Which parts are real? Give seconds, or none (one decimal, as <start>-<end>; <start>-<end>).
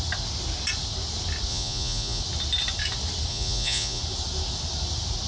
0.0-1.5; 2.2-3.3; 4.0-5.3